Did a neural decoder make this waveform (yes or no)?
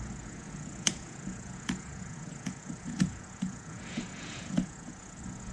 yes